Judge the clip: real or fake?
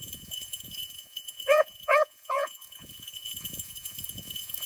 fake